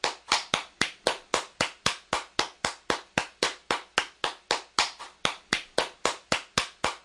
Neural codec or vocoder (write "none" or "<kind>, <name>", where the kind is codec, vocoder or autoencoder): none